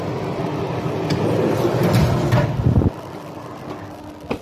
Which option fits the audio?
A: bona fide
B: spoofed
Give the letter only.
A